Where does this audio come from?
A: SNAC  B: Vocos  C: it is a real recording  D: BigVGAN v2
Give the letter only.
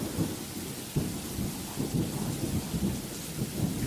C